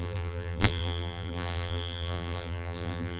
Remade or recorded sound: remade